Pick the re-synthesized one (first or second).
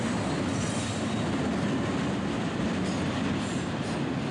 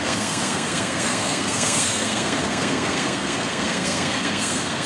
second